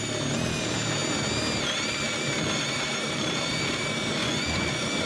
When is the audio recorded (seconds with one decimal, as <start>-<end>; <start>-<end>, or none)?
0.0-4.2